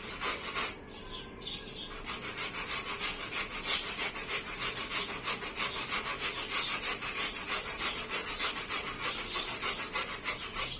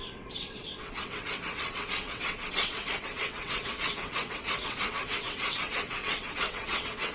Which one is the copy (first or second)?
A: second